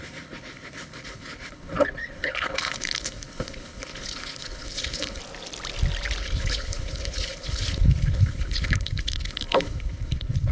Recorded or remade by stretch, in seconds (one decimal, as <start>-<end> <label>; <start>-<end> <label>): 0.0-5.2 remade; 5.2-6.2 recorded; 6.2-10.5 remade